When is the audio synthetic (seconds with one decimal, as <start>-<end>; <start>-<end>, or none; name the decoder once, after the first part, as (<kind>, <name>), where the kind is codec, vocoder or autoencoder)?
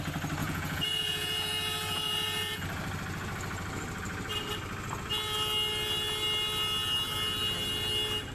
0.4-2.6 (vocoder, Vocos)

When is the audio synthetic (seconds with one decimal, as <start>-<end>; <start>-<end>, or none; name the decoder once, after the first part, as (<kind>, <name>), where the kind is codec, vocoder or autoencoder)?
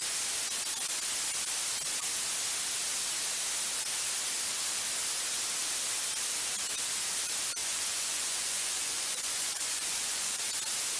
7.6-10.4 (vocoder, Vocos)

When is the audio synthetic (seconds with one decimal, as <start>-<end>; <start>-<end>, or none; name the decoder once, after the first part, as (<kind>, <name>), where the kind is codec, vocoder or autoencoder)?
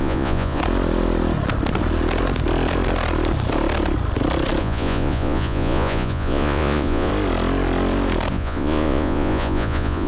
0.0-0.6 (vocoder, Vocos); 4.6-7.1; 8.3-10.1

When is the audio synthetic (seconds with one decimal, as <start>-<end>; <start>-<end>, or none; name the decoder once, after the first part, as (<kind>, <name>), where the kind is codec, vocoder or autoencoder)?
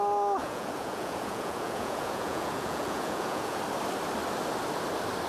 0.4-3.6 (vocoder, Vocos)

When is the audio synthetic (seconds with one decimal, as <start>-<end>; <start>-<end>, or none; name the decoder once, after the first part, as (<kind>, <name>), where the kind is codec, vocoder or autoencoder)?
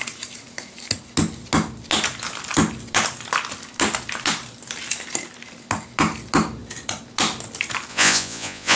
7.9-8.8 (vocoder, Vocos)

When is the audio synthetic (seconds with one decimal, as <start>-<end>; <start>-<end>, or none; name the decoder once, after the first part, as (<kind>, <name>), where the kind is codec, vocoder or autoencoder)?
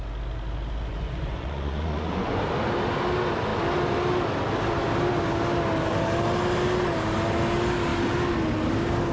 0.9-2.4 (vocoder, Vocos)